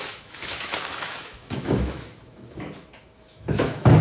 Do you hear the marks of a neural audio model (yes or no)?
yes